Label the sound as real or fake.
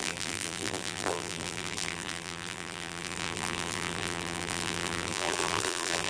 fake